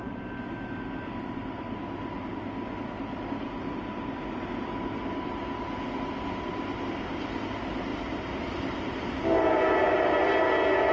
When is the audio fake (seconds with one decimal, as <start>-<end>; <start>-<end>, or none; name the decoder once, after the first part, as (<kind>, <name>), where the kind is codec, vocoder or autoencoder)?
none